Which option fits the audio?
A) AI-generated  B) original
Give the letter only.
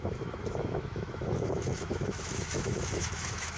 A